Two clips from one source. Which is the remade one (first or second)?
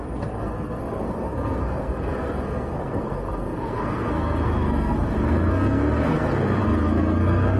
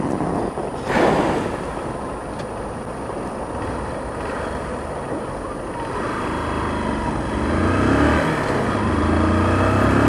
first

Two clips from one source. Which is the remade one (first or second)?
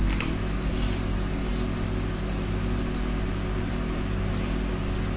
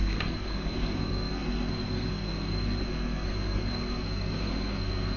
second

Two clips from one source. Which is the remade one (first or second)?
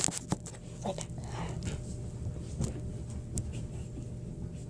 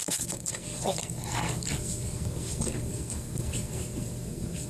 second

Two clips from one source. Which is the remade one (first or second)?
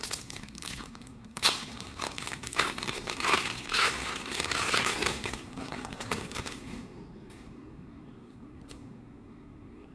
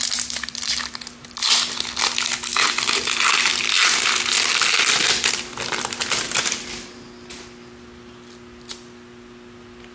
first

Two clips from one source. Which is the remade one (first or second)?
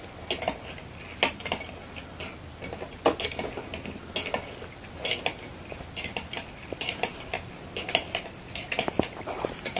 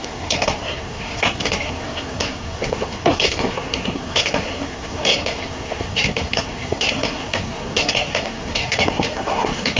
second